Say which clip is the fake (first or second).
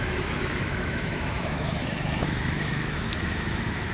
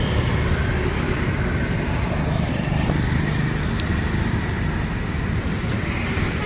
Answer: first